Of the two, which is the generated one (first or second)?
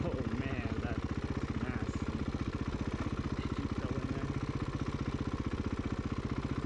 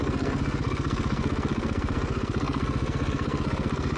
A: second